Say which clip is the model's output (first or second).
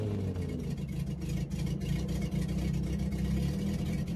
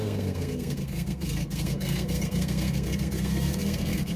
second